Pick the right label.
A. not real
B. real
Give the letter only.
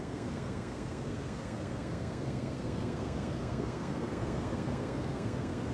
A